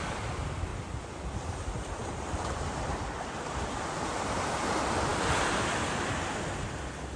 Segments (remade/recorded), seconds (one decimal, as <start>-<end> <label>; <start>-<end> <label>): 0.0-0.7 recorded; 0.7-2.6 remade; 2.6-7.2 recorded